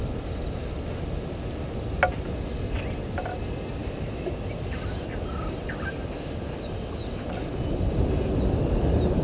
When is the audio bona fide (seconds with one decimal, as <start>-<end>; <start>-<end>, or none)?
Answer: 0.0-3.8; 4.3-9.2